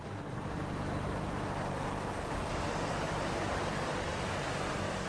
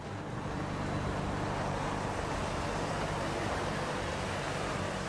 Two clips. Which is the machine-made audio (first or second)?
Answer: first